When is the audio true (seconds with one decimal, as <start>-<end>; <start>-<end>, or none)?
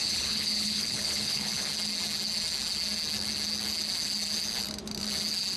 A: 1.7-5.6